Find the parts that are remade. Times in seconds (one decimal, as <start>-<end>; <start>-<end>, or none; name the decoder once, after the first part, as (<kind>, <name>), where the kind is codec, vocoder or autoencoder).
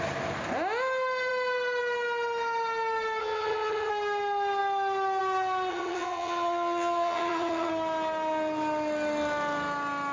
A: 3.2-3.9 (vocoder, HiFi-GAN); 5.7-7.7